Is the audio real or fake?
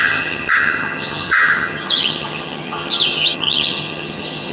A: fake